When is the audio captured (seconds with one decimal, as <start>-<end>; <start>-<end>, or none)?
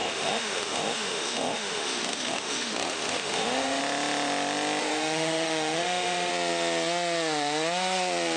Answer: 3.8-4.8; 6.3-8.4